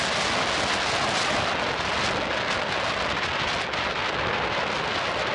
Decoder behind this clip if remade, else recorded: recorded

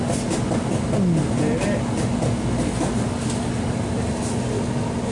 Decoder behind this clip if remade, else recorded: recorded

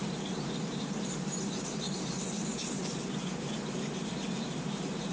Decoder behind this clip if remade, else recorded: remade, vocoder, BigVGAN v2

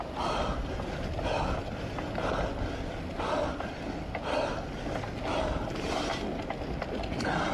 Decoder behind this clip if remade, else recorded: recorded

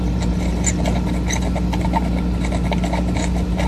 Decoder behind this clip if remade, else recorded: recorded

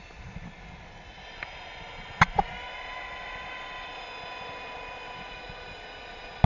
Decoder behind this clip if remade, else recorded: recorded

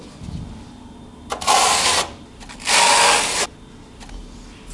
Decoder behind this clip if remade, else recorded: recorded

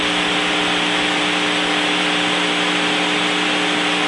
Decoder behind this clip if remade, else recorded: recorded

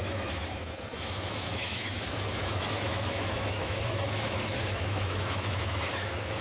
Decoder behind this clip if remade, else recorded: remade, autoencoder, DAC-VAE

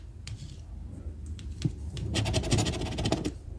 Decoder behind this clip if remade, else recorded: remade, vocoder, BigVGAN v2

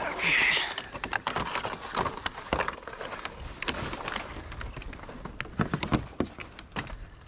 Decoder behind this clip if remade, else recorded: recorded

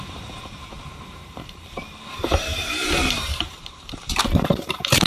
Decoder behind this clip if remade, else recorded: remade, vocoder, BigVGAN v2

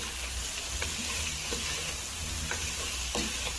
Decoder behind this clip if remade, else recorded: recorded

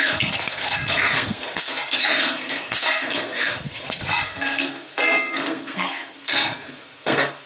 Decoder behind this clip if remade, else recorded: remade, codec, SNAC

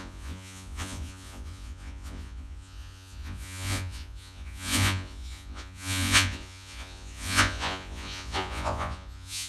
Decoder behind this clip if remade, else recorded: remade, vocoder, Vocos